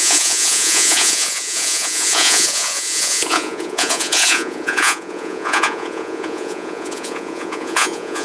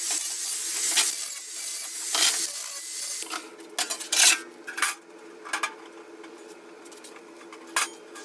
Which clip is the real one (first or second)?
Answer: second